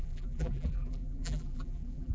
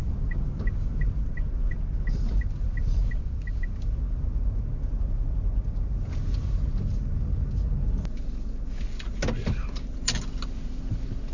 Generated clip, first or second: first